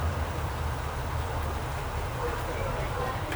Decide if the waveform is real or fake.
real